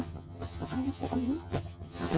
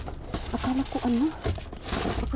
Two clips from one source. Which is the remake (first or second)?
first